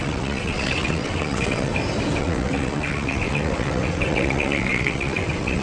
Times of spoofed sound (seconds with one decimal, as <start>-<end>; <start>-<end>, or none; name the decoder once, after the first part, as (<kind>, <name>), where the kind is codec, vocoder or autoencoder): 0.0-1.7 (vocoder, WaveNeXt); 2.2-5.6